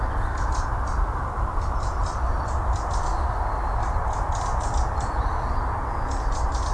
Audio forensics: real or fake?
real